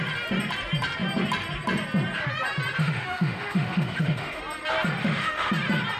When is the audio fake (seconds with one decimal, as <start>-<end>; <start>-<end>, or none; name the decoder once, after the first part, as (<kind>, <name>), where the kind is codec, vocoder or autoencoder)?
2.8-4.4 (autoencoder, DAC-VAE); 5.0-5.5